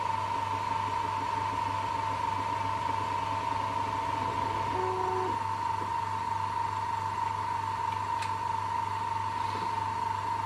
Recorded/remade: recorded